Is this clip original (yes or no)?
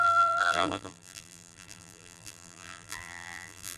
no